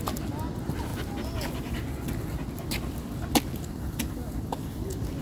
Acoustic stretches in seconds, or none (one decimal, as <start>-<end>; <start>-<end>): 0.0-5.2